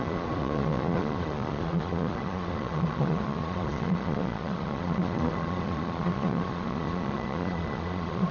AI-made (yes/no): yes